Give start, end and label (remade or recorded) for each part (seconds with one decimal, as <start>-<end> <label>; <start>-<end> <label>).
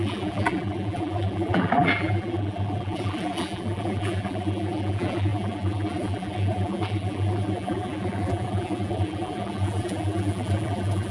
0.0-11.1 remade